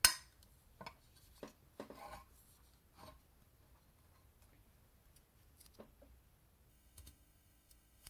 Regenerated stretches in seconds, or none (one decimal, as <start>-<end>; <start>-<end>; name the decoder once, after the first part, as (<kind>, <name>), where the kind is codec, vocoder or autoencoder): 6.7-8.1 (autoencoder, DAC-VAE)